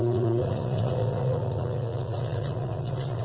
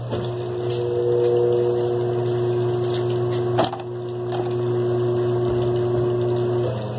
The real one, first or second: second